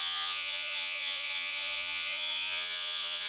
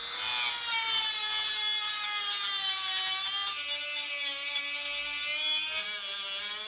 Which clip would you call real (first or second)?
second